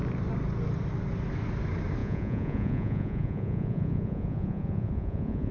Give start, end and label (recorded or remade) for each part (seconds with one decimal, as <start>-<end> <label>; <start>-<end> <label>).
0.0-2.0 recorded; 2.0-5.5 remade